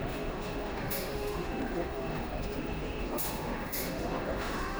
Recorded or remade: remade